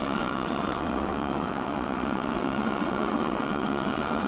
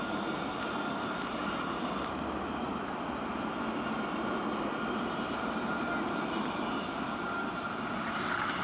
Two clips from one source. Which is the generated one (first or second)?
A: first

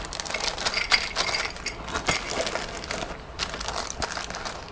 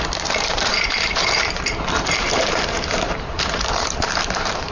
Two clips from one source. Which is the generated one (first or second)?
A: second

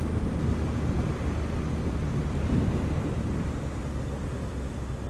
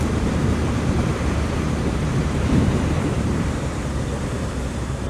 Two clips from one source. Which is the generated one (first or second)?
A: second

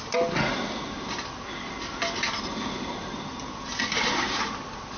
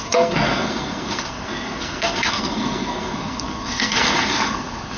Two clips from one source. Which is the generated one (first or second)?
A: second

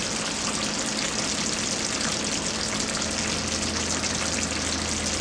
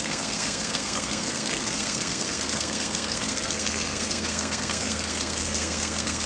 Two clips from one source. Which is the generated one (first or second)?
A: second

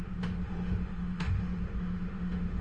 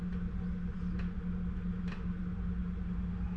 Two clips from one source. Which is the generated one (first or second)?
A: first